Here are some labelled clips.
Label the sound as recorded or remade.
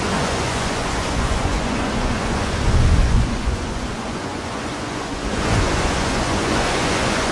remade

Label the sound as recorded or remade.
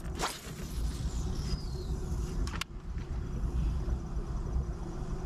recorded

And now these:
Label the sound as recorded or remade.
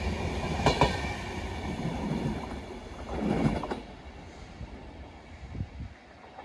recorded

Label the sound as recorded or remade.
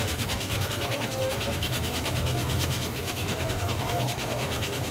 remade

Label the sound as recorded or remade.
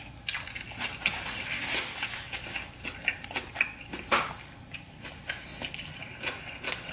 recorded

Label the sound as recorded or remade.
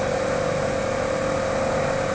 recorded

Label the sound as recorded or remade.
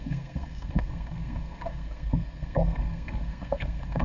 remade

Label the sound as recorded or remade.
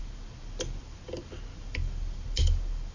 recorded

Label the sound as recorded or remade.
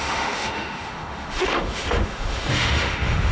remade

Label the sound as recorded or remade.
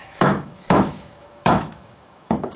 remade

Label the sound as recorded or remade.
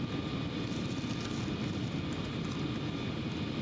recorded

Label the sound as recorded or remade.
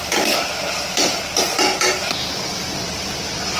recorded